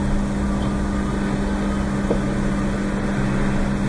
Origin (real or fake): real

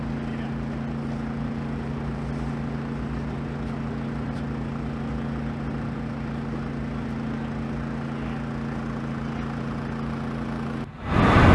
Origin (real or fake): real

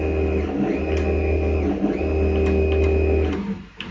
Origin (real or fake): real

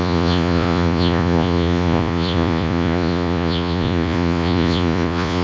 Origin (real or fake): fake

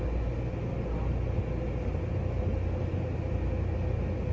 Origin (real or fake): real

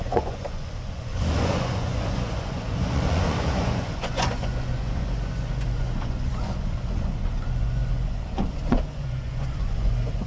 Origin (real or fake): fake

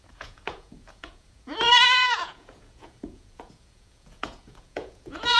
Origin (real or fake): fake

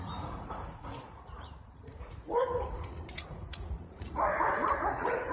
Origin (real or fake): fake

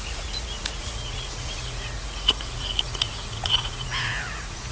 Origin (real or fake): fake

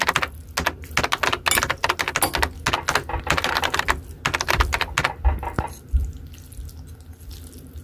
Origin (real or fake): real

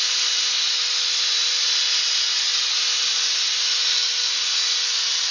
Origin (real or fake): real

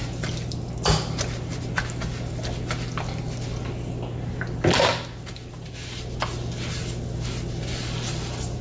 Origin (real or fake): real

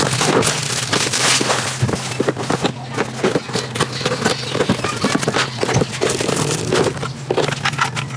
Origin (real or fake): real